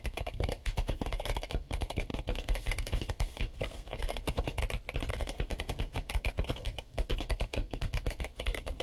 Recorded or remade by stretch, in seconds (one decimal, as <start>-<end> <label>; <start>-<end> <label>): 0.0-4.6 remade; 4.6-5.1 recorded; 5.1-8.8 remade